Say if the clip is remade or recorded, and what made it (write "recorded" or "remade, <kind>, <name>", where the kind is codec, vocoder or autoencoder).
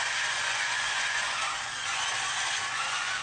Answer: remade, vocoder, Vocos